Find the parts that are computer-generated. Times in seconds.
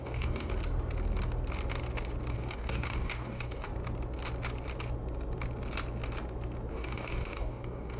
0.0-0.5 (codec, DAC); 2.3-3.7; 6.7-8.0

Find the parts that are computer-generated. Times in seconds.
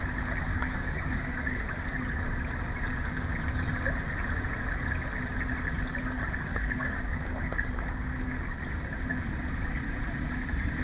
0.5-1.6 (codec, DAC); 6.5-8.4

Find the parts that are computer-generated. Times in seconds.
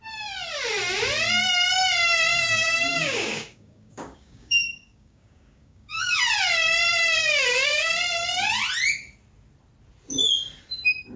2.3-6.2 (codec, DAC); 7.2-7.9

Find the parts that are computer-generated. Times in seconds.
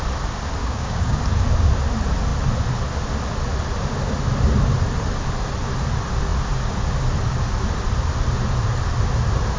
0.6-1.2 (codec, DAC)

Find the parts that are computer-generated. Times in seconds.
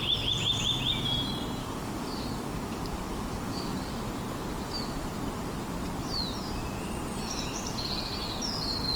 1.6-4.0 (codec, DAC)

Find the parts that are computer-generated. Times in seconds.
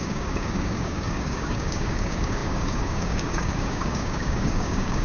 0.0-5.0 (codec, DAC)